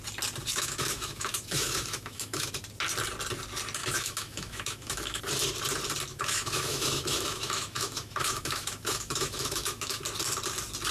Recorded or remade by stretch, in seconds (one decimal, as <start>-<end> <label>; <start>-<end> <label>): 0.0-0.5 recorded; 0.5-2.5 remade; 2.5-3.8 recorded; 3.8-5.2 remade; 5.2-6.1 recorded; 6.1-10.0 remade; 10.0-10.9 recorded

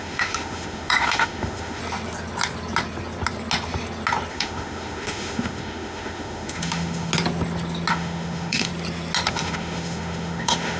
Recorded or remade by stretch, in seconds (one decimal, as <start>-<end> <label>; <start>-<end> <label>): 0.0-1.8 remade; 1.8-4.3 recorded; 4.3-7.1 remade; 7.1-7.9 recorded; 7.9-8.7 remade; 8.7-9.3 recorded; 9.3-10.8 remade

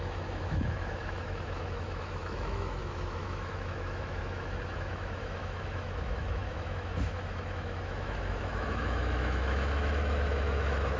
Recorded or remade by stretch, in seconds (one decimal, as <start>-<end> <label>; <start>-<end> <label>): 0.0-11.0 remade